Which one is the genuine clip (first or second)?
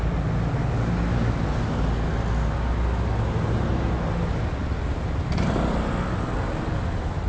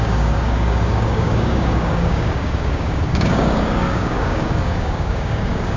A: first